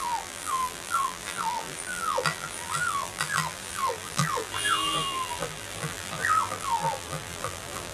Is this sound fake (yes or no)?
yes